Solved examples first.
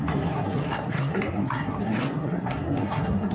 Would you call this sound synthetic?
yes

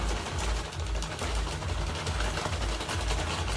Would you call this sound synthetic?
no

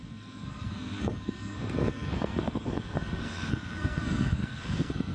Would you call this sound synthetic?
yes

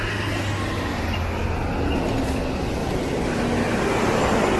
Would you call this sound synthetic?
no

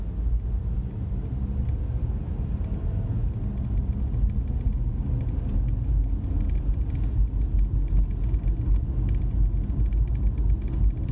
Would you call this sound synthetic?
no